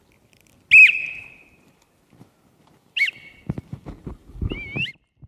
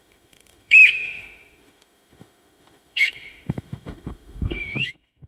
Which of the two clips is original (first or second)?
first